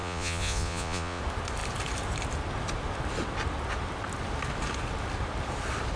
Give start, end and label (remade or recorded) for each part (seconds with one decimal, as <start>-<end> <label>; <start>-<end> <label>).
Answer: 0.0-1.2 remade; 1.2-6.0 recorded